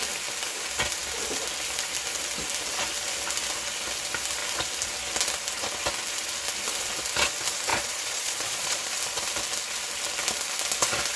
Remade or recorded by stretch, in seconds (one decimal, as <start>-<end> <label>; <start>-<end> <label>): 0.0-7.7 recorded; 7.7-8.9 remade; 8.9-11.2 recorded